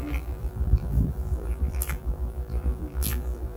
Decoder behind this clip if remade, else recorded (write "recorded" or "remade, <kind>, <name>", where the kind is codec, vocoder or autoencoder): remade, vocoder, BigVGAN v2